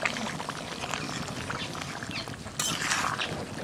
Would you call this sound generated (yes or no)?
no